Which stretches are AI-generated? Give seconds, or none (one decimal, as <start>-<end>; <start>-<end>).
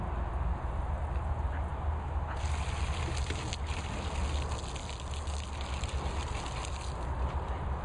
none